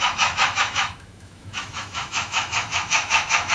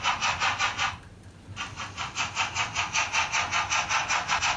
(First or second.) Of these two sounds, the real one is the second